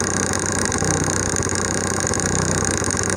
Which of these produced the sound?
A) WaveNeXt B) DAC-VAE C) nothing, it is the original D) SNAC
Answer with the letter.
B